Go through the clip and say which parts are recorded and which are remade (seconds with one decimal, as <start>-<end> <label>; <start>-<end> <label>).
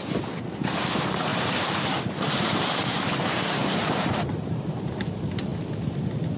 0.0-1.3 recorded; 1.3-5.1 remade; 5.1-6.4 recorded